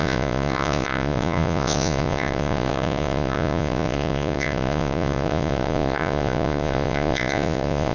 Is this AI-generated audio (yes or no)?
yes